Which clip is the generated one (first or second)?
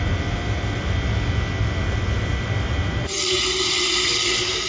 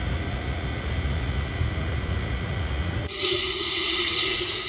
second